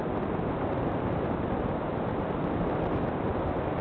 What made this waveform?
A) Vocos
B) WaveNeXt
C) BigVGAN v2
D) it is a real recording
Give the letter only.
D